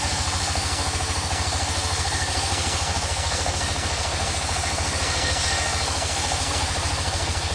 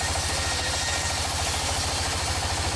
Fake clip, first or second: first